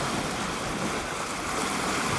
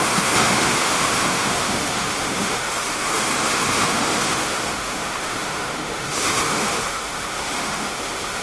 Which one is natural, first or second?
first